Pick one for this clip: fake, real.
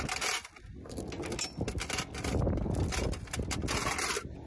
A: real